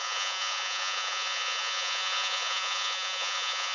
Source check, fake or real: fake